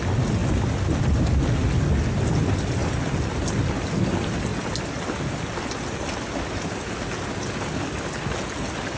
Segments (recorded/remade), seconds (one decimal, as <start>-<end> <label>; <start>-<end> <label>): 0.0-4.5 recorded; 4.5-7.1 remade; 7.1-9.0 recorded